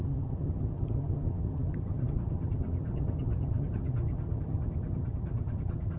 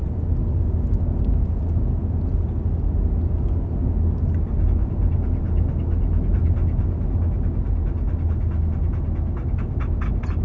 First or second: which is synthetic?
first